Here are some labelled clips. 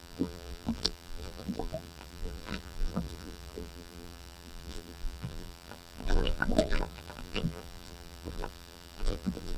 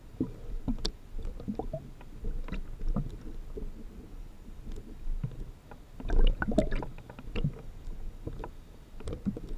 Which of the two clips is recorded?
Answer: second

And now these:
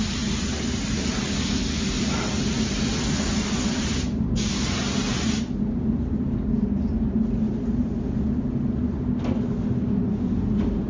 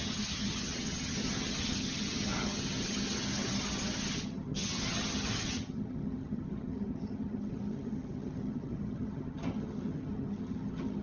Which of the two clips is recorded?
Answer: first